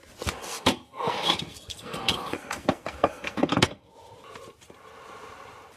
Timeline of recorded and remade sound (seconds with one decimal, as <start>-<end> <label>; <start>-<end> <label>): 0.0-0.4 recorded; 0.4-3.9 remade; 3.9-5.8 recorded